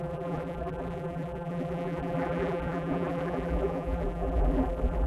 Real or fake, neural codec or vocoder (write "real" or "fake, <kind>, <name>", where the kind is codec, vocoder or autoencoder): fake, vocoder, BigVGAN v2